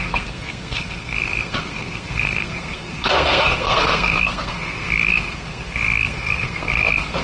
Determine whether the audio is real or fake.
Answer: fake